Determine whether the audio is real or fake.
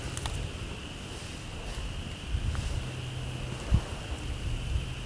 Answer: real